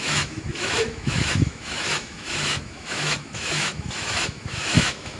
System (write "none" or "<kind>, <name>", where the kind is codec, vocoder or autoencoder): autoencoder, DAC-VAE